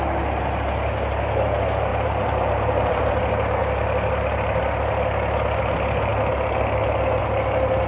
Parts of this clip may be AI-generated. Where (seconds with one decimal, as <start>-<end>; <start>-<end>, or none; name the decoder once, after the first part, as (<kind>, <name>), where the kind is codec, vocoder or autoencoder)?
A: 1.9-3.1 (vocoder, BigVGAN v2)